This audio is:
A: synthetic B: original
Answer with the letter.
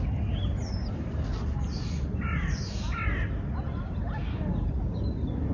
B